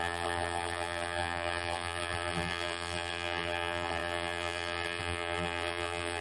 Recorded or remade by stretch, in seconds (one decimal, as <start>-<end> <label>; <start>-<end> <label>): 0.0-6.2 remade